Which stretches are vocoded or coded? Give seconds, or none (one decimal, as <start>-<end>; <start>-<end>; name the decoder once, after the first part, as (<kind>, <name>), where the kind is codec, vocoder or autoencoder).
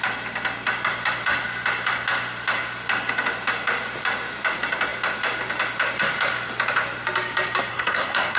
7.7-8.4 (codec, SNAC)